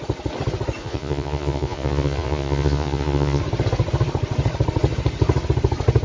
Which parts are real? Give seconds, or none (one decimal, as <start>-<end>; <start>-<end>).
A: 0.0-0.8; 3.4-6.0